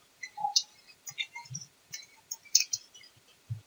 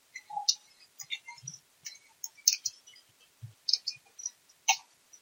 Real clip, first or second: second